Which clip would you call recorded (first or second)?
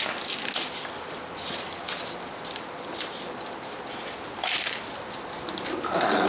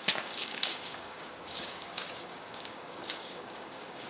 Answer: first